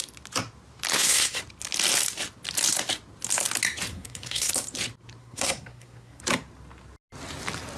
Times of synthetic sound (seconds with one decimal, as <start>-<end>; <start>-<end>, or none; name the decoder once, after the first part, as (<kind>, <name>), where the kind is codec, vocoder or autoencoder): 0.9-1.4 (codec, SNAC); 3.9-4.5; 5.2-6.2